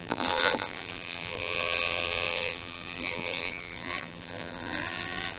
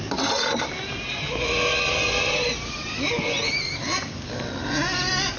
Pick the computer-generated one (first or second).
first